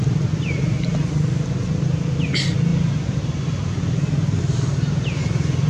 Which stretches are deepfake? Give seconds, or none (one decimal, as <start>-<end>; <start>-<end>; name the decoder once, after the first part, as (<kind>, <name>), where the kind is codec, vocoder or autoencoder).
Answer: none